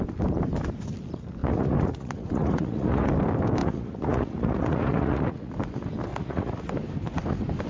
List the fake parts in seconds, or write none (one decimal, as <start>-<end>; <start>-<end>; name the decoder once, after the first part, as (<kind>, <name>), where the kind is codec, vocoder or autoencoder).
1.4-3.1 (vocoder, Vocos); 3.6-5.5; 6.1-6.7